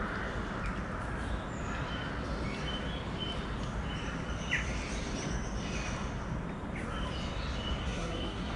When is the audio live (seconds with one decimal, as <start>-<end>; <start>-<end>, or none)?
0.0-7.8